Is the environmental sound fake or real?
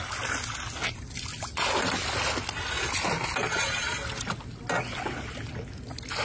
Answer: real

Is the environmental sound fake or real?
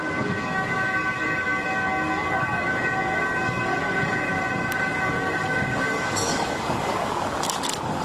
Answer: fake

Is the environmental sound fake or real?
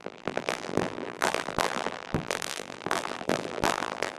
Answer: fake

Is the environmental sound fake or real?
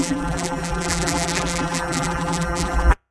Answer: fake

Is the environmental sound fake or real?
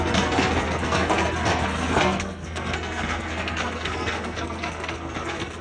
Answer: fake